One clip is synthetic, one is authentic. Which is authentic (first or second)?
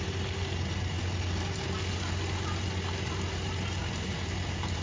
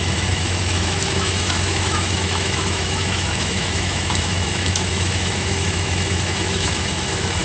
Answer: first